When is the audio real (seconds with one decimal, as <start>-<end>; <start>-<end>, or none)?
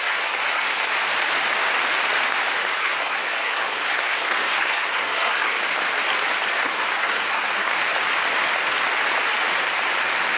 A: 0.9-2.8; 5.6-6.5; 7.7-10.4